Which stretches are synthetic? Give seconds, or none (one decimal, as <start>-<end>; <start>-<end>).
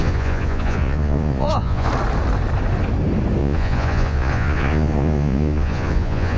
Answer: 0.0-1.9; 3.4-6.4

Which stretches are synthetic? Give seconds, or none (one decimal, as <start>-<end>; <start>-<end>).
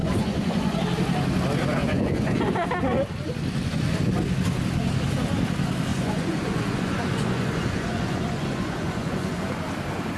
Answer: 0.0-0.8; 1.8-2.4; 5.9-9.5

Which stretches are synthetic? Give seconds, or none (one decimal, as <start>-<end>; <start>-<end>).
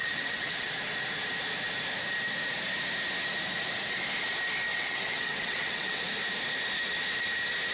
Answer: 0.0-0.7; 4.7-6.0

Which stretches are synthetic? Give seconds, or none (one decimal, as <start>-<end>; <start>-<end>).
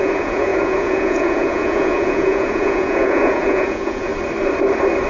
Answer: 0.0-4.1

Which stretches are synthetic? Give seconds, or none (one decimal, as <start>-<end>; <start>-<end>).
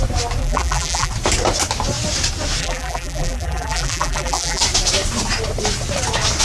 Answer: 0.4-1.1; 2.6-4.6